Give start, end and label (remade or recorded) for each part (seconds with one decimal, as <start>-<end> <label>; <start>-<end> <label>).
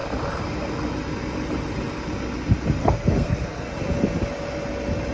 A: 0.0-2.8 recorded; 2.8-3.7 remade; 3.7-5.1 recorded